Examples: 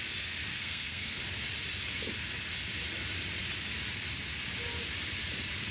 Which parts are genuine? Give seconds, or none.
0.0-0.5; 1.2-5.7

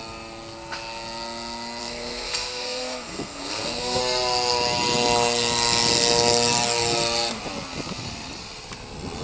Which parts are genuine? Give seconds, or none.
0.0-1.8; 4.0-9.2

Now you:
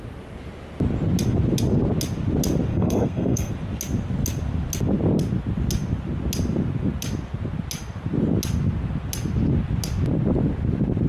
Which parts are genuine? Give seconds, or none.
0.0-2.7; 3.5-11.1

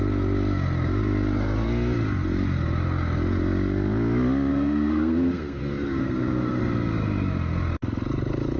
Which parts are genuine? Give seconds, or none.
0.0-4.5; 5.6-6.0; 6.6-8.6